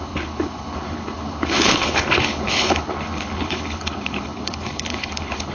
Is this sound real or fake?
fake